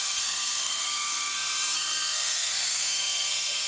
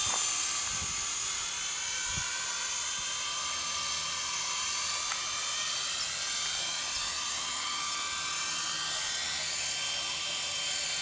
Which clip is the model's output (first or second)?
first